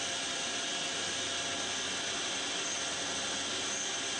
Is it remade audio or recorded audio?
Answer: recorded